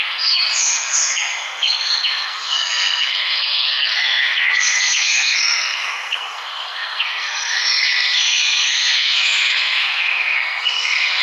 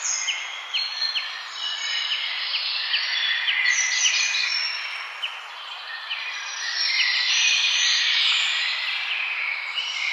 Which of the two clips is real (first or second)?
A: second